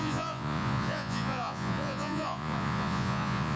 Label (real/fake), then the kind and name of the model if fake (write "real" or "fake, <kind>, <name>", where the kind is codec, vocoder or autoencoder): fake, vocoder, Vocos